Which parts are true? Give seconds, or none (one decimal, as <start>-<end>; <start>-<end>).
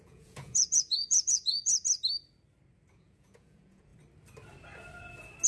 1.7-2.9; 3.9-5.5